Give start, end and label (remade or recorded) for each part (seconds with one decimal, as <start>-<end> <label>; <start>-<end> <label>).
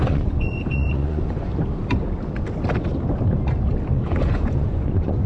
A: 0.0-1.5 remade; 1.5-3.9 recorded; 3.9-5.3 remade